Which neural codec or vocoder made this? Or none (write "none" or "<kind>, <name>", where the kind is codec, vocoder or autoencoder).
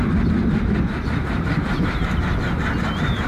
none